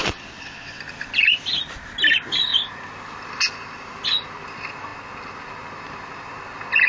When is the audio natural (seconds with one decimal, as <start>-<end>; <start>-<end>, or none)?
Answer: 0.8-6.9